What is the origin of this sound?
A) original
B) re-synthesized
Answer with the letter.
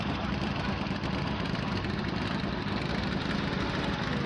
A